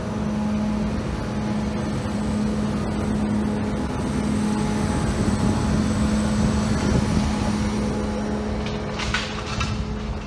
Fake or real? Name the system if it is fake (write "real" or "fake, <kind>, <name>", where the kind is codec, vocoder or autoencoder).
real